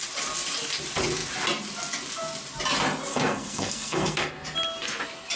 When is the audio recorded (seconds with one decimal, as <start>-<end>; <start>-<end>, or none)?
0.0-3.1; 4.3-5.4